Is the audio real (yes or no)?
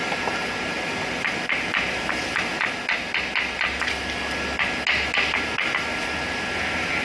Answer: yes